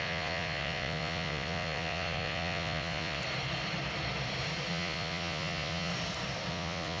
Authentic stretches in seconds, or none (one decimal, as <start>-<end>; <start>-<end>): 3.2-4.7; 5.9-6.5